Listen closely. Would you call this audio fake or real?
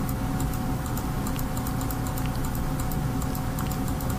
real